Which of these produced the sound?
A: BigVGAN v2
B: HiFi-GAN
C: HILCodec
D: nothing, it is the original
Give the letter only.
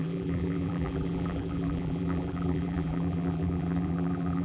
A